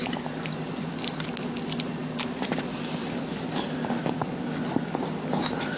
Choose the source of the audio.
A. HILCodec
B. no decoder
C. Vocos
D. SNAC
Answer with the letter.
B